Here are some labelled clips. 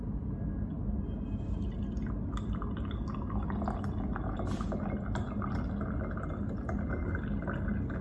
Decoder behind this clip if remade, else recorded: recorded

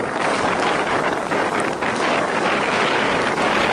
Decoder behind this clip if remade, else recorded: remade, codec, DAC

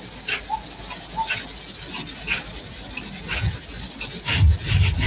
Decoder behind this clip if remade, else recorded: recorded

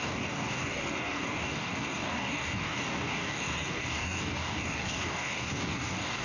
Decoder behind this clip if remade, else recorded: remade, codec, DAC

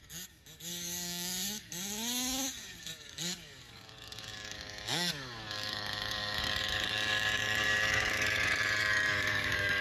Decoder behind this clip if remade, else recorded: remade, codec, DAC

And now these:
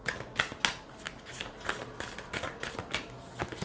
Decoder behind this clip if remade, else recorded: recorded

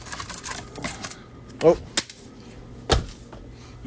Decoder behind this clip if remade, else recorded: recorded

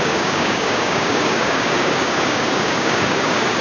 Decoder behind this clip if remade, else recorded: remade, codec, DAC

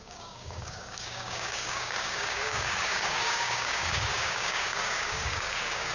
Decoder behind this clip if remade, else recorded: remade, codec, DAC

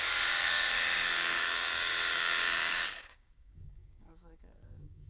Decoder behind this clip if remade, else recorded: remade, codec, DAC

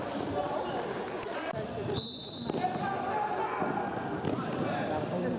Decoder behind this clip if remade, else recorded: recorded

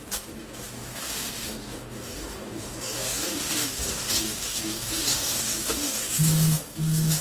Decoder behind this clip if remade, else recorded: remade, codec, DAC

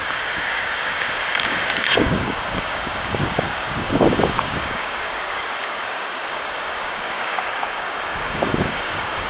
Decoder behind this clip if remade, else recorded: remade, codec, DAC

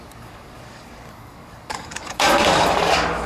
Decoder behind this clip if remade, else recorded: remade, codec, DAC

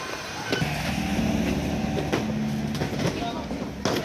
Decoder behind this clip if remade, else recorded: recorded